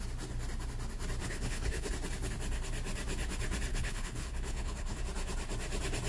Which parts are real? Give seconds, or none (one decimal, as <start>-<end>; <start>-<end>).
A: 0.0-1.2; 1.9-3.7; 5.0-6.1